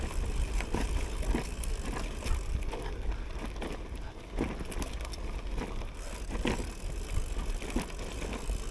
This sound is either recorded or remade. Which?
recorded